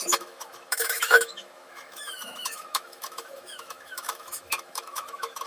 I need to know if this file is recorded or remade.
remade